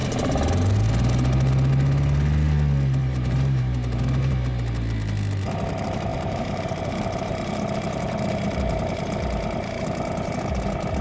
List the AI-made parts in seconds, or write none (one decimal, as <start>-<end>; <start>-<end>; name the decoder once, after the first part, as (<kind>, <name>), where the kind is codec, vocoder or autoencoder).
3.0-4.3 (vocoder, BigVGAN v2); 6.1-6.8